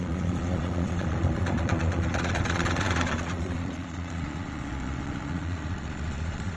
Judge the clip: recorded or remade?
remade